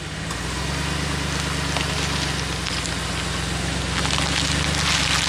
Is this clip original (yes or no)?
yes